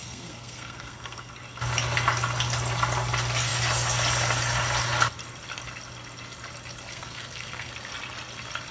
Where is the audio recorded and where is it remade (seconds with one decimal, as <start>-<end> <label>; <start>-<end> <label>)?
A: 0.0-1.3 remade; 1.3-6.9 recorded; 6.9-7.7 remade; 7.7-8.7 recorded